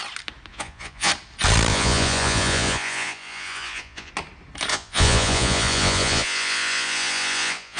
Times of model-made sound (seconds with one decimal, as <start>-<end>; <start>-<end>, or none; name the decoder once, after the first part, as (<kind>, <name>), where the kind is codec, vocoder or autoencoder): 0.5-1.1 (vocoder, Vocos); 1.7-4.1; 4.7-7.8